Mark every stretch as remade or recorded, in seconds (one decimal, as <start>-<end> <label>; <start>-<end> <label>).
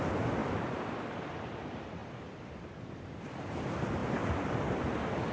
0.0-5.3 recorded